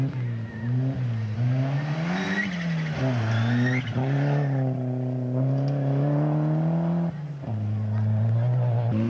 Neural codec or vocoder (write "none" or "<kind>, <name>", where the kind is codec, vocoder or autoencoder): none